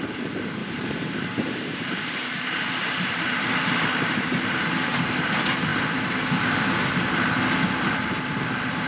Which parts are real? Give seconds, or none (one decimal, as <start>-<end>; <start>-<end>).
0.0-0.6; 5.1-8.9

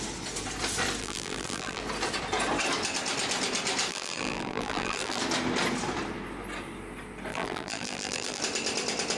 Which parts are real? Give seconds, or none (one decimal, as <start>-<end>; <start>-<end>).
0.0-1.0; 1.8-3.9; 5.2-7.3; 8.4-9.2

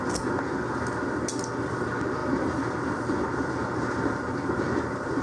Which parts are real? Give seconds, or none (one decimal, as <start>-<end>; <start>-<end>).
0.0-2.2; 4.2-5.2

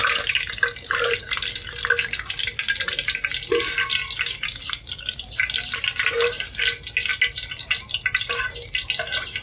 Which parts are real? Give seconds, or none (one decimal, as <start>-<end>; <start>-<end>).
0.0-9.4

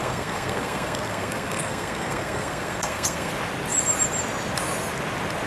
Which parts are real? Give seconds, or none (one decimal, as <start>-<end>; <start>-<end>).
3.3-5.5